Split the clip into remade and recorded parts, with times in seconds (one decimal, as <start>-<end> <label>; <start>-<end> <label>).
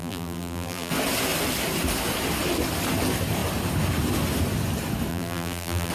0.0-0.9 remade; 0.9-5.1 recorded; 5.1-5.9 remade